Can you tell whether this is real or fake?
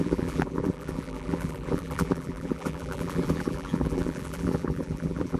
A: fake